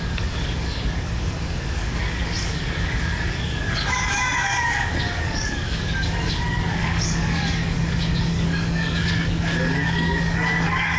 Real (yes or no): no